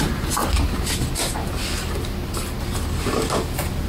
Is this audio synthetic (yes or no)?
no